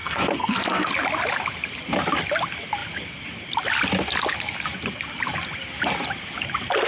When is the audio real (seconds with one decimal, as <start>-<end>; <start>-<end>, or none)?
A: 0.9-6.9